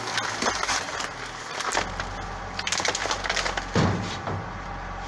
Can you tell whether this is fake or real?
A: real